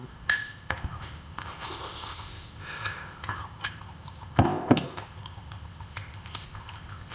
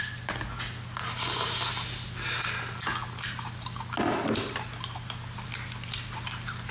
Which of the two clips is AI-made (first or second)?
first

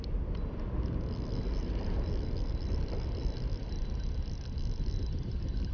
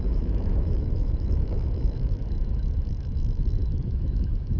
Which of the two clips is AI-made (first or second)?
second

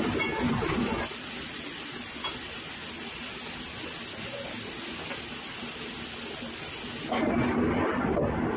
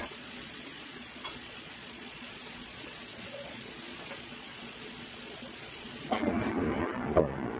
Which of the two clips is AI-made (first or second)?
second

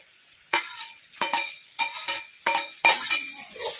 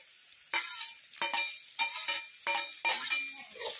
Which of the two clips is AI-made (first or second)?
first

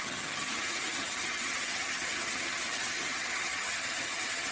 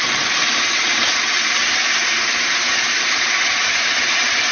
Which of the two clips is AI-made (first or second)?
first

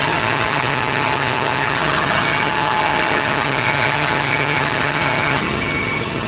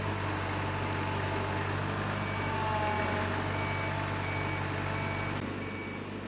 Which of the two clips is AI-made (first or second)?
first